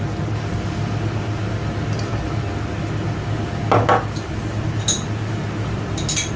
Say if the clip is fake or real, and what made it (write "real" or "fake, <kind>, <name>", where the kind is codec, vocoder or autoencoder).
real